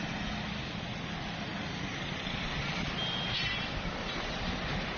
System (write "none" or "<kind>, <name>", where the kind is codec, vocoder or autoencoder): none